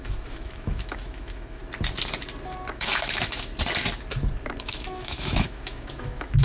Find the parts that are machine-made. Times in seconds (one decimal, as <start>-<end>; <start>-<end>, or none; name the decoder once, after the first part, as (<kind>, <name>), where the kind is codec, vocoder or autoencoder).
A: 0.0-1.6 (autoencoder, DAC-VAE); 2.7-3.5; 4.6-6.4